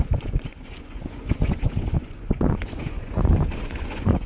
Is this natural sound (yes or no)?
no